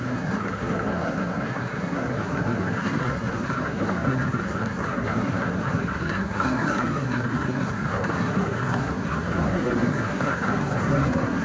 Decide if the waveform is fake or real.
fake